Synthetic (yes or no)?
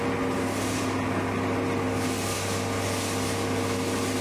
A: no